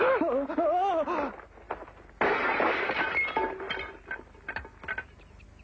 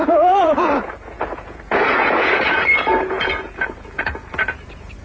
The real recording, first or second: first